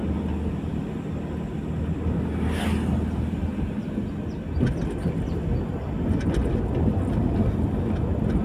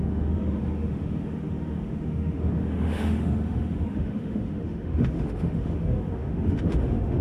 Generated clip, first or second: second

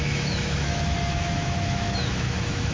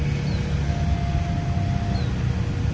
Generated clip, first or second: first